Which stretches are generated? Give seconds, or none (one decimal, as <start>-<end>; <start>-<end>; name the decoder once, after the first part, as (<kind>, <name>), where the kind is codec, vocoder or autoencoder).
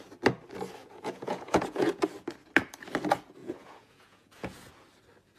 0.8-2.0 (vocoder, Vocos); 3.4-4.7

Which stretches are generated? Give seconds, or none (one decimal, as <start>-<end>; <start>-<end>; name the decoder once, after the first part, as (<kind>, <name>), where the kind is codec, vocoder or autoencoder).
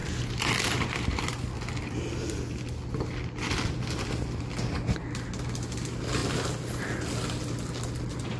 none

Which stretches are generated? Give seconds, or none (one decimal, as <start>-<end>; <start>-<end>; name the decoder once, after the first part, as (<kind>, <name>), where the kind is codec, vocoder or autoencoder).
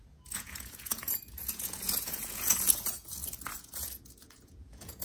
0.0-5.0 (vocoder, Vocos)